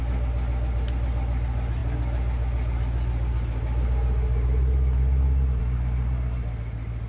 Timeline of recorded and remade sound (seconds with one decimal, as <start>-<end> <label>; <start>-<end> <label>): 0.0-7.1 recorded